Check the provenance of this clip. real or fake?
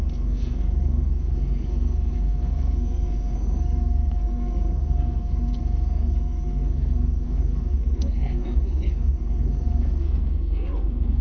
fake